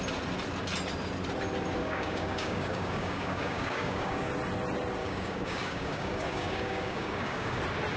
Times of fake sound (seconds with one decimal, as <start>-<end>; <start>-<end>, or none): 1.8-4.3; 5.0-7.6